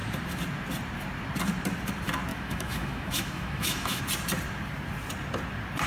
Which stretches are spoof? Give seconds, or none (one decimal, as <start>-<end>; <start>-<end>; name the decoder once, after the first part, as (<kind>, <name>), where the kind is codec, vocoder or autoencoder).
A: 2.3-4.0 (autoencoder, DAC-VAE)